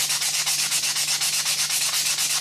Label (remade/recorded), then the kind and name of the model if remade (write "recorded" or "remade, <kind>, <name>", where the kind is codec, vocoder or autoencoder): recorded